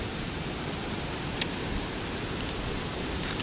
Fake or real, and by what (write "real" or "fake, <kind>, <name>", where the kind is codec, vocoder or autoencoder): real